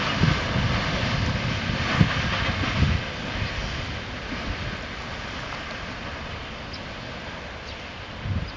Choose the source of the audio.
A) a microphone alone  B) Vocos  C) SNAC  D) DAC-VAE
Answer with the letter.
A